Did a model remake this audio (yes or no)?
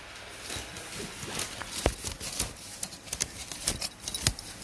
no